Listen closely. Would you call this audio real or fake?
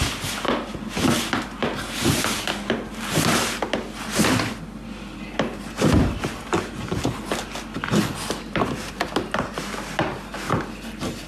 real